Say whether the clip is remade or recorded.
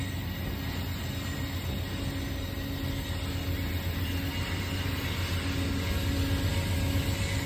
recorded